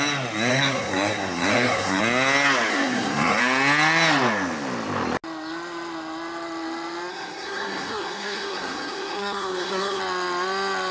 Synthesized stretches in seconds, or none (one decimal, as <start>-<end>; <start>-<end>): 0.5-2.0; 2.7-3.4; 7.1-10.0